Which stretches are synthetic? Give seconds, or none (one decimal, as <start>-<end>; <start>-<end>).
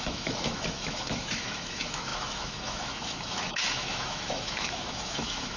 0.0-5.6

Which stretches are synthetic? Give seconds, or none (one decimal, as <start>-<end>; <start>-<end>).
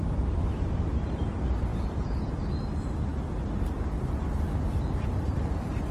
1.7-2.4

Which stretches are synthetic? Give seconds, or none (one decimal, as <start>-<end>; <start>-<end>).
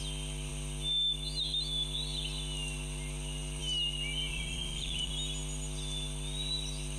4.3-5.1